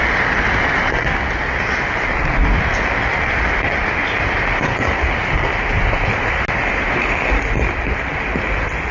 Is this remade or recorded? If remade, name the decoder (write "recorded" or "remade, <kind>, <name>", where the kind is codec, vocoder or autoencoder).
recorded